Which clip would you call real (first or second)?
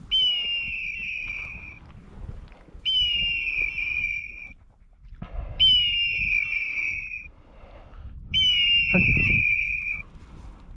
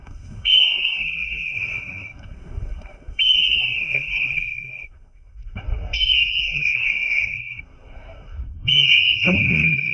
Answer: first